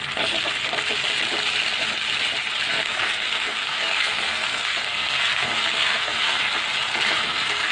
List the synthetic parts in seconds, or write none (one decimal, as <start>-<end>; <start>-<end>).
2.7-6.4; 6.9-7.7